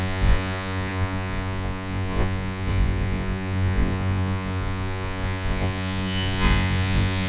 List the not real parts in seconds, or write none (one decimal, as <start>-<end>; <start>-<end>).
0.0-7.3